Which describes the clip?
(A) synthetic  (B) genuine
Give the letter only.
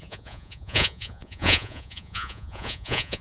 A